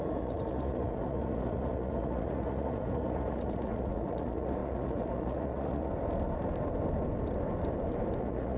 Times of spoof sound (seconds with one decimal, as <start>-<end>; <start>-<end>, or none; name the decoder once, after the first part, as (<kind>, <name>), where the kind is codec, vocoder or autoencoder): 0.0-5.9 (vocoder, Vocos); 8.2-8.6